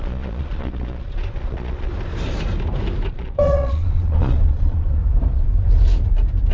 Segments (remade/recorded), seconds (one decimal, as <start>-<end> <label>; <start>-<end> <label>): 0.0-1.9 remade; 1.9-3.1 recorded; 3.1-5.0 remade; 5.0-6.5 recorded